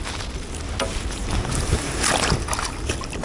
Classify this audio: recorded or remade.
recorded